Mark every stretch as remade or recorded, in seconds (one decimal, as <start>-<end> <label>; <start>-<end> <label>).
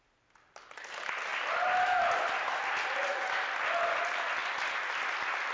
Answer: 0.0-5.5 recorded